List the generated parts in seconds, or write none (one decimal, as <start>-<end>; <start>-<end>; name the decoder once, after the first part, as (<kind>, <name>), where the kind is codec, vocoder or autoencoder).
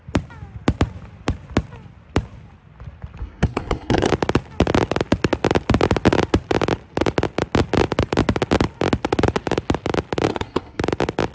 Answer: 3.2-4.1 (codec, SNAC); 10.3-10.8